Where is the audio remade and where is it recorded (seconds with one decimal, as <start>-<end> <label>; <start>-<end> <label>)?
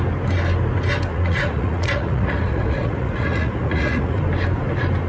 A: 0.0-1.1 recorded; 1.1-4.2 remade; 4.2-5.1 recorded